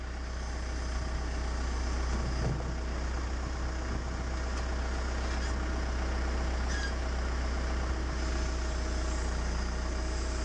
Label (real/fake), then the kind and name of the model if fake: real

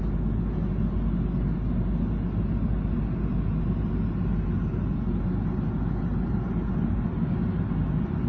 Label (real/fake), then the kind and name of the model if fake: real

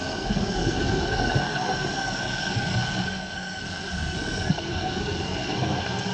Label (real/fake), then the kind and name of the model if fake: fake, codec, SNAC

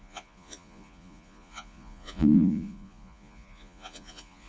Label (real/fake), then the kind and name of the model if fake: fake, vocoder, Vocos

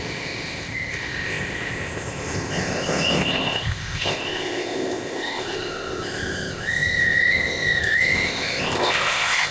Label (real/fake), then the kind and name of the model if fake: fake, codec, ZipCodec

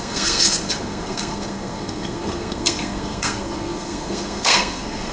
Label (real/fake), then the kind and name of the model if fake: fake, codec, SNAC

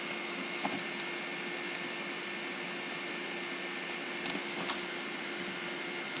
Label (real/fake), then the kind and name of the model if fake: real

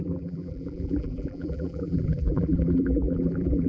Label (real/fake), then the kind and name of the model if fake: fake, vocoder, BigVGAN v2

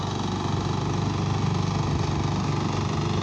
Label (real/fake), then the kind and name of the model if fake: real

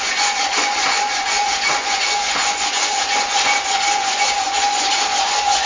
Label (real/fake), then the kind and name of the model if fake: fake, vocoder, Vocos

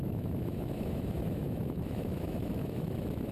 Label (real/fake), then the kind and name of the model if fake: fake, autoencoder, DAC-VAE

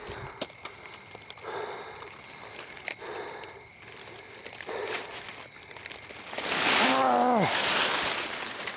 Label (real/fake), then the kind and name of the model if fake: real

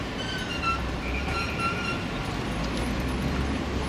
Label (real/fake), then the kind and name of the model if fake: real